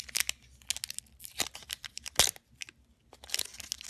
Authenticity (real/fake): real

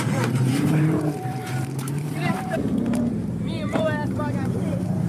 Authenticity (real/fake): fake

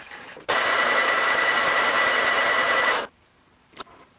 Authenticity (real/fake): fake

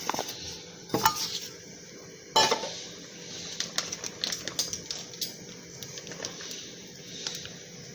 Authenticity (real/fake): real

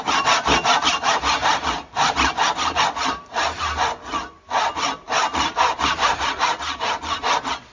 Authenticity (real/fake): real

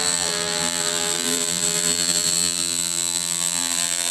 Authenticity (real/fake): fake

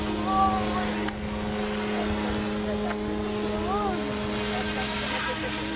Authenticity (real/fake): real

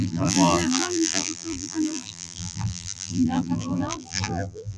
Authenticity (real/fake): fake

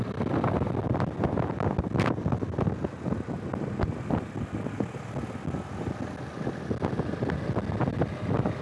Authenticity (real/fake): real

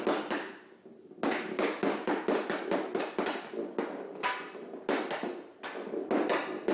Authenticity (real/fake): real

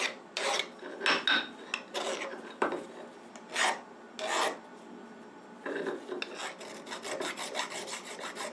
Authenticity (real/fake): real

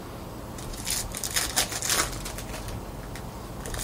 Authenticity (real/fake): real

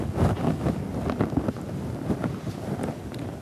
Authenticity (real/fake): real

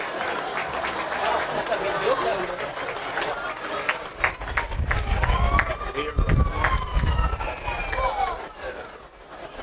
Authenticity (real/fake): real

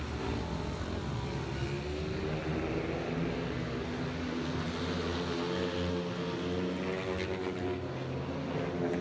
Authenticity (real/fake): real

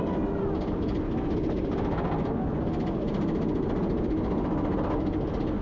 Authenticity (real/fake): real